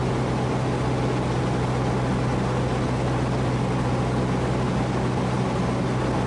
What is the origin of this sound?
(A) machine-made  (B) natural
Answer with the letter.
B